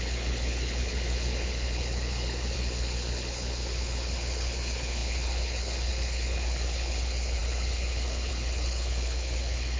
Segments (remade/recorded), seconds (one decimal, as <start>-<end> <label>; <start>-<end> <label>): 0.0-9.8 remade